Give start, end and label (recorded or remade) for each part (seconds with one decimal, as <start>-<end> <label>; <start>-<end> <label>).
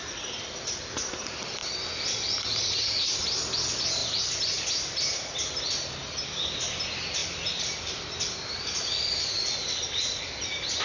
0.0-10.8 recorded